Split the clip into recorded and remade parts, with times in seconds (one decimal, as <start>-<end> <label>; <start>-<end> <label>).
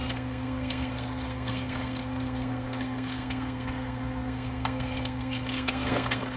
0.0-6.4 remade